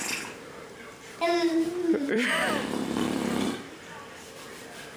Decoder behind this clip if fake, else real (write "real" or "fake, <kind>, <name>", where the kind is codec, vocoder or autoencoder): fake, vocoder, BigVGAN v2